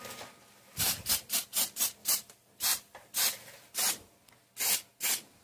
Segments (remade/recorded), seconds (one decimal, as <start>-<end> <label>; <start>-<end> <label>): 0.0-2.0 recorded; 2.0-3.9 remade; 3.9-5.4 recorded